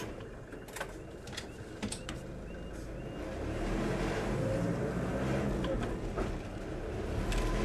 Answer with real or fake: real